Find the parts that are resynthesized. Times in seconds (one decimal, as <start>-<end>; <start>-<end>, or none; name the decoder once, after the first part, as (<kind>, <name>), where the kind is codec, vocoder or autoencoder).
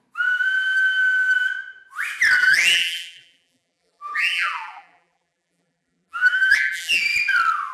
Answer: 2.4-7.0 (vocoder, BigVGAN v2)